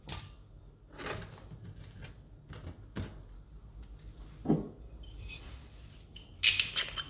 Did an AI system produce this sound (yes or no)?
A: no